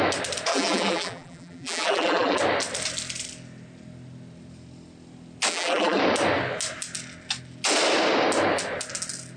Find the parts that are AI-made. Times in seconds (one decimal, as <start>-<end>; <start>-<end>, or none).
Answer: 0.5-2.4; 5.5-6.0